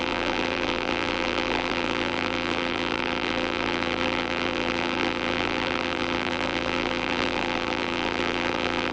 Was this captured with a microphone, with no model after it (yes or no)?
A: no